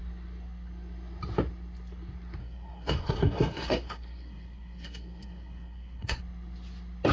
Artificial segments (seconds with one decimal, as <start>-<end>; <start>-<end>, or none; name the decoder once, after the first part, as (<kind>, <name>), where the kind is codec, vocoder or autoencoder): 2.4-6.2 (codec, SNAC)